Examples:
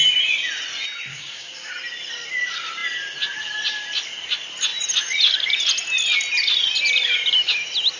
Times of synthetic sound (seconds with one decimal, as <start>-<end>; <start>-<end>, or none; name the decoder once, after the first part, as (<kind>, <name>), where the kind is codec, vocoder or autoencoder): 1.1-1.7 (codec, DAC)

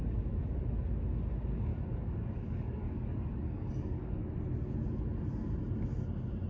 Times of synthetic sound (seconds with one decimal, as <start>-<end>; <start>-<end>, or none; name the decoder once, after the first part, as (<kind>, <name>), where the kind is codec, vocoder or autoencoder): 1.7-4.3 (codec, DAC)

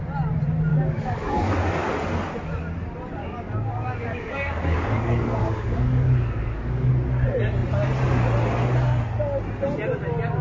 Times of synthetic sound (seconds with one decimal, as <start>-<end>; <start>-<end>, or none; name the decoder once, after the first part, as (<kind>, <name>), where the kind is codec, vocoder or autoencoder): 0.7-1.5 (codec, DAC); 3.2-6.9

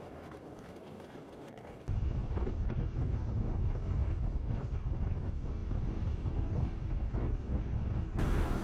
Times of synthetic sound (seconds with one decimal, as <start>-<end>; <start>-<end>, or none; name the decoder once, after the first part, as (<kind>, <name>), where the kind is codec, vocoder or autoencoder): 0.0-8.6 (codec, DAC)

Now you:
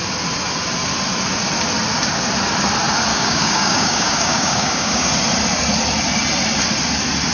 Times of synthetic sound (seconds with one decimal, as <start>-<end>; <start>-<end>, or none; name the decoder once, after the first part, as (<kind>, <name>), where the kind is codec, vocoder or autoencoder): 3.1-5.1 (codec, DAC)

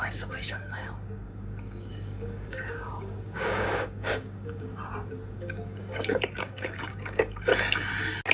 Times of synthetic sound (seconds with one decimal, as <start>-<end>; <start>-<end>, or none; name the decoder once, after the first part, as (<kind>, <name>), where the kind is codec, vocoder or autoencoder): 0.0-4.7 (codec, DAC); 5.3-7.5